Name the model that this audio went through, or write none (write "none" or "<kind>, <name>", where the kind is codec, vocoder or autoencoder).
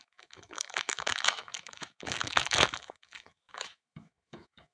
autoencoder, DAC-VAE